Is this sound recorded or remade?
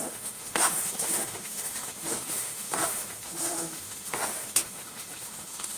remade